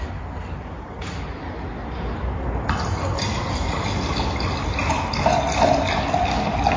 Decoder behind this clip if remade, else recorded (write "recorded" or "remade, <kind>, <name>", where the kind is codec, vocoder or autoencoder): recorded